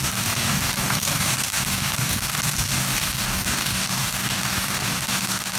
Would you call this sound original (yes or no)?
no